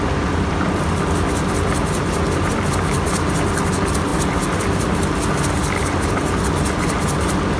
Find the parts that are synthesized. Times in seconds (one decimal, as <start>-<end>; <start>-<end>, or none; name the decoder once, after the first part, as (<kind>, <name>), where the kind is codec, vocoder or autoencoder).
none